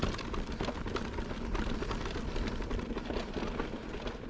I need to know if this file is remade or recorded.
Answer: recorded